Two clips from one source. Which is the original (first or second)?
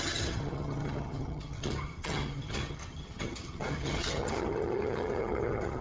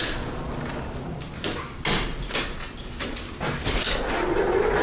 second